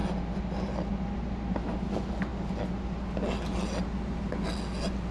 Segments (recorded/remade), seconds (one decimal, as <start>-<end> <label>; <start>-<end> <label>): 0.0-5.1 recorded